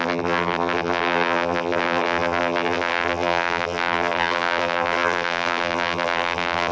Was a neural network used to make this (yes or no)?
yes